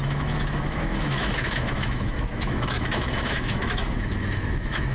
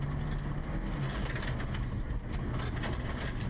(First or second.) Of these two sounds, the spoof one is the first